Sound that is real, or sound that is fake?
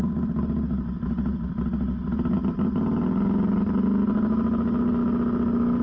real